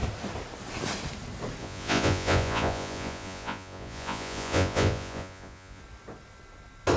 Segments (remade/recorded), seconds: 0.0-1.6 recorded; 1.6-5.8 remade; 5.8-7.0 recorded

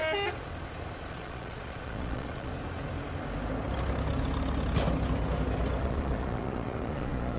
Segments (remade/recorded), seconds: 0.0-1.1 recorded; 1.1-2.5 remade; 2.5-5.8 recorded; 5.8-7.4 remade

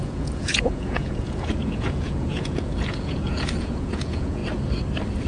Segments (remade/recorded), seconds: 0.0-4.4 remade; 4.4-5.3 recorded

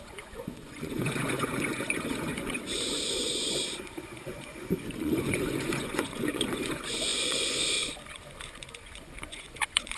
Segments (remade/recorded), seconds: 0.0-10.0 remade

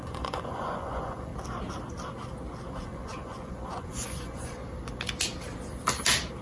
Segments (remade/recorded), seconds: 0.0-1.3 remade; 1.3-2.7 recorded; 2.7-4.6 remade; 4.6-6.4 recorded

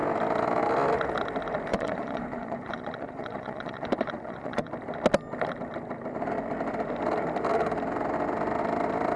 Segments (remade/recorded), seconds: 0.0-1.7 recorded; 1.7-4.7 remade; 4.7-9.2 recorded